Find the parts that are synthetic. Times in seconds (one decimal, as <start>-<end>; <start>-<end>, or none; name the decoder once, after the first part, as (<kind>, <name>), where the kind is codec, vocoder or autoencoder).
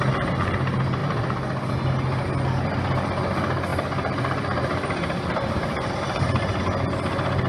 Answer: 1.0-1.7 (vocoder, BigVGAN v2); 3.7-6.6